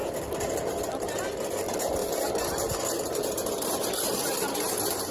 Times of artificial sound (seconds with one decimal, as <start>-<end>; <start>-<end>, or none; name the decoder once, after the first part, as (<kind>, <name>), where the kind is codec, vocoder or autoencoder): none